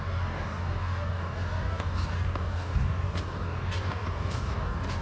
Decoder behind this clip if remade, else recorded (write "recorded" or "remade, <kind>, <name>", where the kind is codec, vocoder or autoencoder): remade, codec, DAC